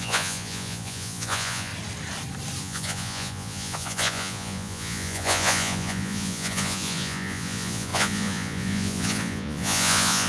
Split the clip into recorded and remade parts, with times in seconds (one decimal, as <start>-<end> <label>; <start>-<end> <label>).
0.0-1.7 remade; 1.7-2.6 recorded; 2.6-10.3 remade